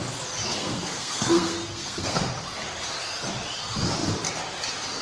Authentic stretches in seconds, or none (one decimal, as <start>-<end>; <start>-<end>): 0.0-0.5; 2.2-5.0